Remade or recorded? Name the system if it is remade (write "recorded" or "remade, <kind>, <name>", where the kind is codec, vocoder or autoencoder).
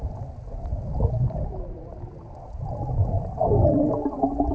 recorded